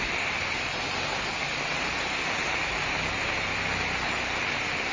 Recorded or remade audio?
recorded